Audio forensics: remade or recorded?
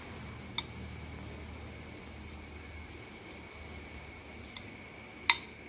recorded